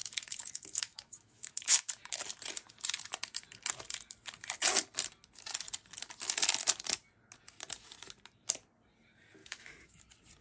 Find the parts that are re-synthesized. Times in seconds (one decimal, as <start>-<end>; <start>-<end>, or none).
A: 0.0-1.9; 9.4-10.0